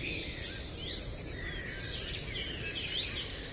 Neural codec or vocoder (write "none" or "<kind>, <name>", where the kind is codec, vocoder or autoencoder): none